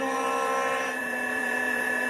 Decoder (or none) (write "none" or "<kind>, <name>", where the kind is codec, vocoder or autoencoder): vocoder, BigVGAN v2